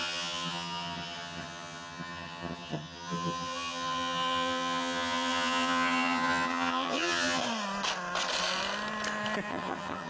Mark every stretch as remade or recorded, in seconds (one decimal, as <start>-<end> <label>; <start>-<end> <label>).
0.0-7.4 remade; 7.4-9.5 recorded; 9.5-10.1 remade